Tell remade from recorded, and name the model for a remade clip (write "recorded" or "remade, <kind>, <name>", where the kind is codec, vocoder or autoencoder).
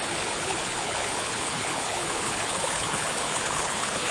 remade, codec, HILCodec